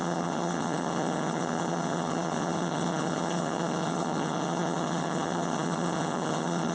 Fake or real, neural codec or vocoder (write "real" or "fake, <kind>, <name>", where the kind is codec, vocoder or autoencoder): fake, vocoder, HiFi-GAN